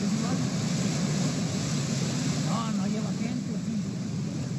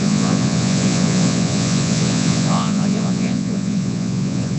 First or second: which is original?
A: first